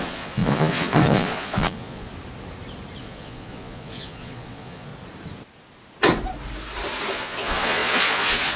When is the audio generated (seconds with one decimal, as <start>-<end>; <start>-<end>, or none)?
0.0-2.1; 3.0-4.9; 7.1-8.6